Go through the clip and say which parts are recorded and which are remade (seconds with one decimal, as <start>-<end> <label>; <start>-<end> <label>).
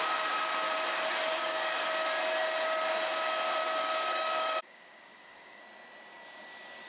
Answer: 0.0-1.3 recorded; 1.3-1.8 remade; 1.8-3.6 recorded; 3.6-5.6 remade; 5.6-6.9 recorded